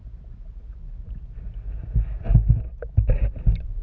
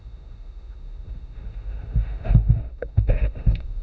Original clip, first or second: first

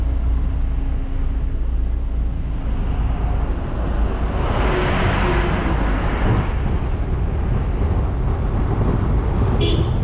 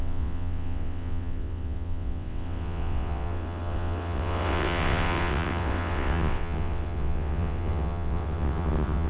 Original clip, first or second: first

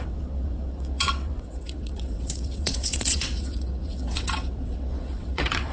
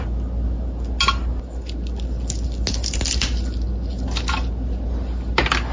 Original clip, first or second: second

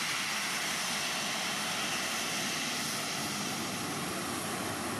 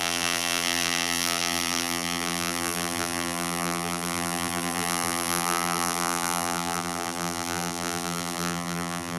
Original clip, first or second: first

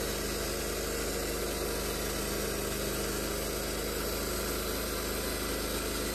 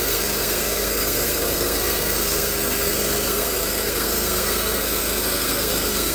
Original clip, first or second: first